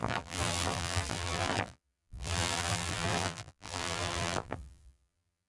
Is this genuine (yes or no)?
no